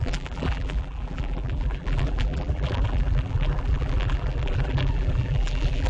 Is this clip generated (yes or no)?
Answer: yes